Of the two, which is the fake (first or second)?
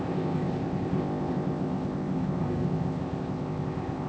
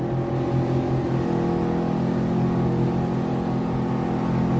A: first